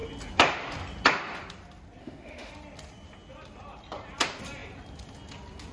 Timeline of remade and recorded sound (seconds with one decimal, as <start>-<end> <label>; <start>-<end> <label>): 0.0-2.0 recorded; 2.0-2.5 remade; 2.5-5.7 recorded